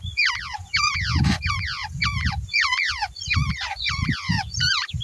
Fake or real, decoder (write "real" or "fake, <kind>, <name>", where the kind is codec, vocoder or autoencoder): fake, vocoder, Vocos